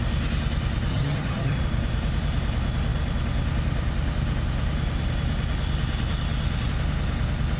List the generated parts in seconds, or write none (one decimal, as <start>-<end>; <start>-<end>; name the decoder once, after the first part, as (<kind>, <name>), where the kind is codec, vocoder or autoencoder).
0.9-1.6 (vocoder, HiFi-GAN)